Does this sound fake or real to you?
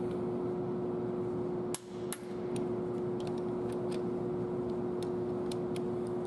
real